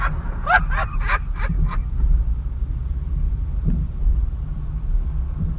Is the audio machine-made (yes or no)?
no